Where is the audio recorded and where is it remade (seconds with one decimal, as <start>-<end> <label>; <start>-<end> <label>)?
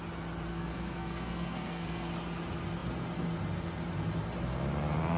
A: 0.0-0.5 recorded; 0.5-2.1 remade; 2.1-5.2 recorded